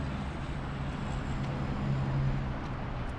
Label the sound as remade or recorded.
recorded